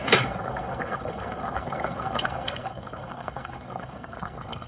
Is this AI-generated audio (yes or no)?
yes